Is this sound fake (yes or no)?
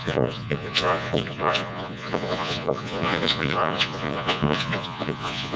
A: yes